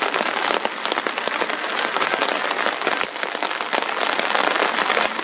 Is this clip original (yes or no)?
yes